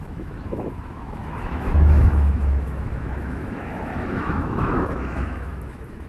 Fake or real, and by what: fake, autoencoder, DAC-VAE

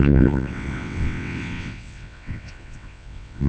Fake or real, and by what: fake, vocoder, WaveNeXt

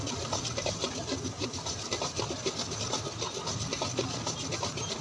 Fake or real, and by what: real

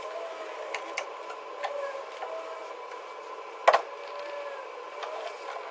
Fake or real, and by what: real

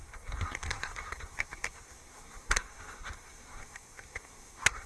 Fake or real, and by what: fake, codec, SNAC